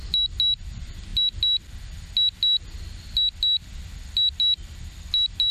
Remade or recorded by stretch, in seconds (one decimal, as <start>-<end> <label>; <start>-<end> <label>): 0.0-5.5 recorded